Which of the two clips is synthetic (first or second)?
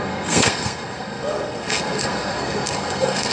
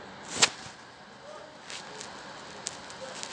first